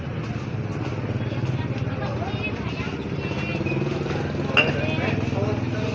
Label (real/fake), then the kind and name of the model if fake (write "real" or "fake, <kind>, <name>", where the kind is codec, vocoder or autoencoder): real